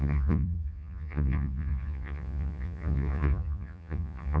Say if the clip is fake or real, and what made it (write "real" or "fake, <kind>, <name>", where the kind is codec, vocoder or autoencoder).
fake, vocoder, Vocos